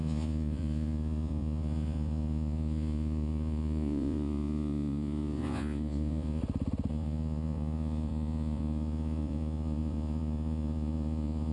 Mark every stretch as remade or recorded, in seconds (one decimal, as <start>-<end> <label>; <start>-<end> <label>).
0.0-6.4 remade; 6.4-6.9 recorded; 6.9-11.5 remade